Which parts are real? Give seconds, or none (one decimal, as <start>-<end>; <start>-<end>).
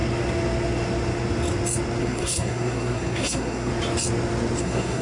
0.0-2.0; 3.7-4.6